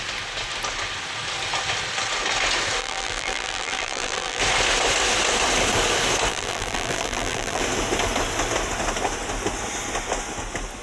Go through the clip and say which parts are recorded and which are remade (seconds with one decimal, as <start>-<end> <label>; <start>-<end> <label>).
0.0-2.8 recorded; 2.8-4.4 remade; 4.4-6.3 recorded; 6.3-7.6 remade; 7.6-10.8 recorded

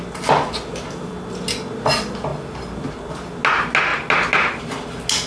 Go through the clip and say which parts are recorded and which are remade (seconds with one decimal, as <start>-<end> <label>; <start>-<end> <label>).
0.0-5.3 recorded

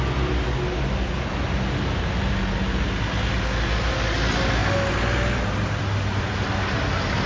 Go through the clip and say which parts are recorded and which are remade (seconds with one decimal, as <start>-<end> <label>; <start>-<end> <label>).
0.0-7.3 recorded

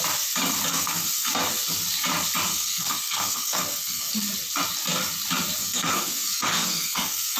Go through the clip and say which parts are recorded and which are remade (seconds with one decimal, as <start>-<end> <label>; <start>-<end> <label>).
0.0-0.7 recorded; 0.7-1.3 remade; 1.3-2.5 recorded; 2.5-4.1 remade; 4.1-5.6 recorded; 5.6-7.4 remade

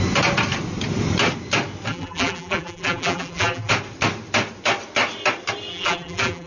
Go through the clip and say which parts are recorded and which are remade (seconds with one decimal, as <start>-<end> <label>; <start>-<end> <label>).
0.0-1.9 recorded; 1.9-3.7 remade; 3.7-5.7 recorded; 5.7-6.5 remade